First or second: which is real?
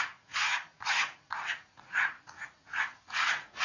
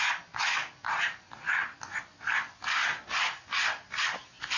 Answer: second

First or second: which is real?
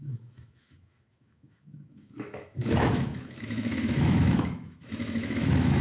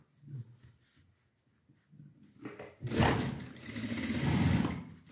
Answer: second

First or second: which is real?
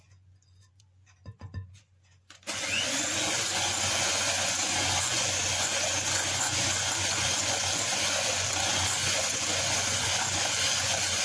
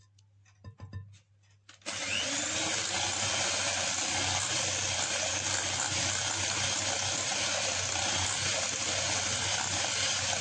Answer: second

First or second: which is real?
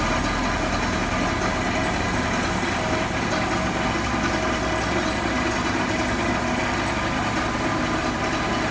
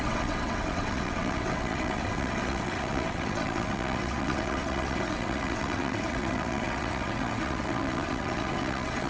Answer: first